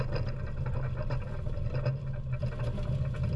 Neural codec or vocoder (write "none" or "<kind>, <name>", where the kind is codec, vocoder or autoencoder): none